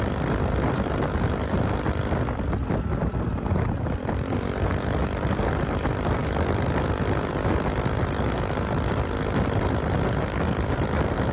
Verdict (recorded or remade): recorded